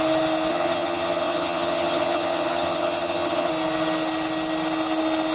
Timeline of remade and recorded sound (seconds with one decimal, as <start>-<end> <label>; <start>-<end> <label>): 0.0-0.5 recorded; 0.5-3.5 remade; 3.5-5.3 recorded

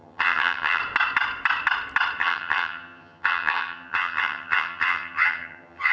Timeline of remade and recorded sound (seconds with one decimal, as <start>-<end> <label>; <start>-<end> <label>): 0.0-0.8 remade; 0.8-2.2 recorded; 2.2-5.9 remade

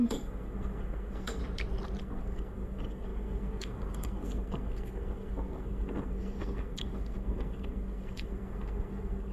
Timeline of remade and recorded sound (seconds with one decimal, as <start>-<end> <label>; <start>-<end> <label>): 0.0-1.4 remade; 1.4-2.0 recorded; 2.0-9.3 remade

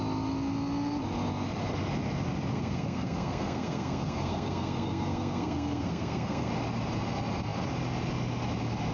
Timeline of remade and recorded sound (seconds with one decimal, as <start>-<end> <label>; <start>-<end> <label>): 0.0-2.5 recorded; 2.5-6.5 remade; 6.5-8.9 recorded

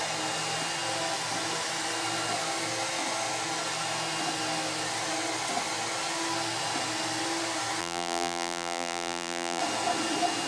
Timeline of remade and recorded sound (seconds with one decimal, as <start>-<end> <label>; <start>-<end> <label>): 0.0-7.8 recorded; 7.8-9.6 remade; 9.6-10.5 recorded

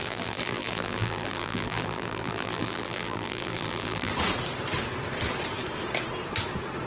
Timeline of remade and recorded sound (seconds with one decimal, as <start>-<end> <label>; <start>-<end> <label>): 0.0-4.1 remade; 4.1-6.9 recorded